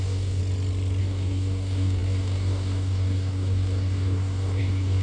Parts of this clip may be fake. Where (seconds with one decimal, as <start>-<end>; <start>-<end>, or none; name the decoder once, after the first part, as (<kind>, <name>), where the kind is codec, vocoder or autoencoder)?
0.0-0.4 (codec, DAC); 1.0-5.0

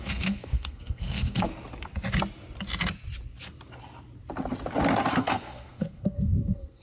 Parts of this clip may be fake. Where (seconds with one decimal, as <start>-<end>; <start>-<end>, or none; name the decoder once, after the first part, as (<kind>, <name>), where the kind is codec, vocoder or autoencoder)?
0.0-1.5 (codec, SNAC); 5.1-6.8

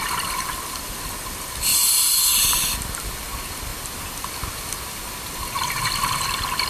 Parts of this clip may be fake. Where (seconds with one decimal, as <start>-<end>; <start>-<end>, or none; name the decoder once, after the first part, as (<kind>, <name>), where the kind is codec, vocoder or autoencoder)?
none

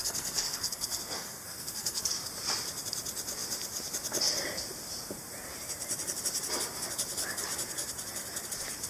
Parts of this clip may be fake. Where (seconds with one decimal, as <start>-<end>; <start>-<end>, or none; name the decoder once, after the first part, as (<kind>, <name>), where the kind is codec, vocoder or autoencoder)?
0.0-2.2 (codec, SNAC)